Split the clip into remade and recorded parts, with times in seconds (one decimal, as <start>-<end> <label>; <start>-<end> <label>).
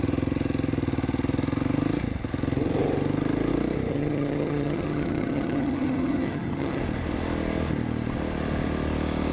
0.0-3.9 recorded; 3.9-6.8 remade; 6.8-9.3 recorded